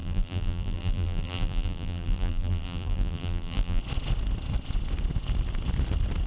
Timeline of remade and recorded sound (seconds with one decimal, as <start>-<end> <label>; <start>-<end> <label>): 0.0-3.8 remade; 3.8-6.3 recorded